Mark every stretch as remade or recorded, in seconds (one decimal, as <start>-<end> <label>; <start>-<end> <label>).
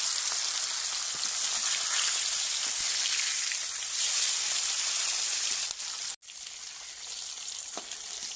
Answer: 0.0-8.4 recorded